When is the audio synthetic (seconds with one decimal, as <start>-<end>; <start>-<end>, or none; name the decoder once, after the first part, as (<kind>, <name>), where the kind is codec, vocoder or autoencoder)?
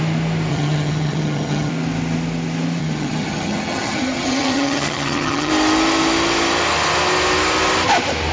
0.5-1.7 (vocoder, HiFi-GAN); 2.8-5.5